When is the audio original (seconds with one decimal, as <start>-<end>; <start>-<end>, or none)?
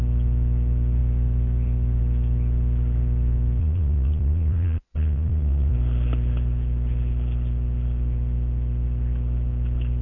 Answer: 0.0-3.6; 5.7-10.0